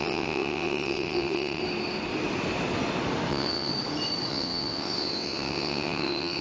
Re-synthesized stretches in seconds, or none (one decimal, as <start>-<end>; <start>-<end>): 0.0-1.6; 3.3-3.7; 4.3-6.4